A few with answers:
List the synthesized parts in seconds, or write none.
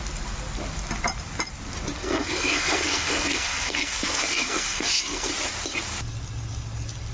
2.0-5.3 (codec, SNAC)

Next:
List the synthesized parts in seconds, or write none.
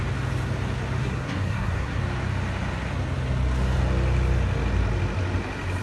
1.0-2.0 (codec, SNAC)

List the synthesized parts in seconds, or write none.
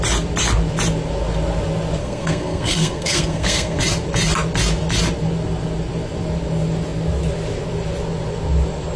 2.0-3.8 (codec, SNAC)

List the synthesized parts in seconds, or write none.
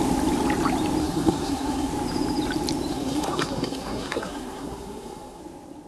1.0-1.9 (codec, SNAC); 2.9-5.4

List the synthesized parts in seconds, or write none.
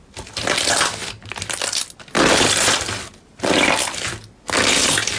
none